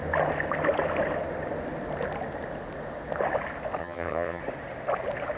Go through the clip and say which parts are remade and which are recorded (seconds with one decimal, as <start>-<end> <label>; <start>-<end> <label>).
0.0-3.8 recorded; 3.8-4.4 remade; 4.4-5.4 recorded